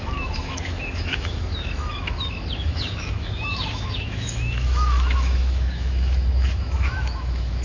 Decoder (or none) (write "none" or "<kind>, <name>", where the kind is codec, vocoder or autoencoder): autoencoder, DAC-VAE